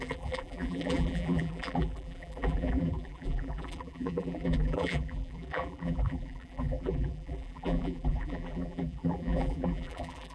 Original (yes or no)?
no